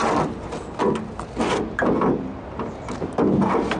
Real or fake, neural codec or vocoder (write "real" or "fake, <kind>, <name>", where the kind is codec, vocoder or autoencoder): real